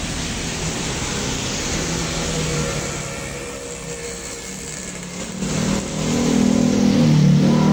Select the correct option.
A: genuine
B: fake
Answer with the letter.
A